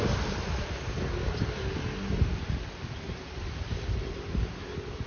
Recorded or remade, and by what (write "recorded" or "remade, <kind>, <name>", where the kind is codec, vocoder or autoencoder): recorded